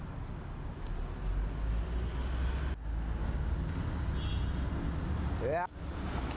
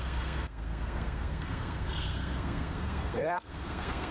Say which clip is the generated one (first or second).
second